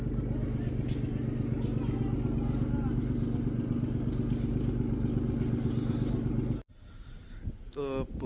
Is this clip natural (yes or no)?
yes